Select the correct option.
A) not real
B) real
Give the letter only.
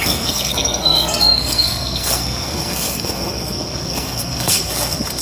A